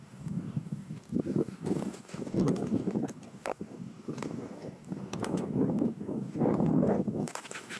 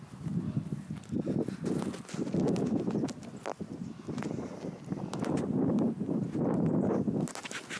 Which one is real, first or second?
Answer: second